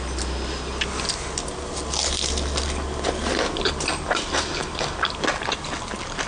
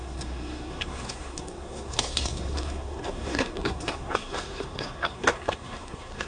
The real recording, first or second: first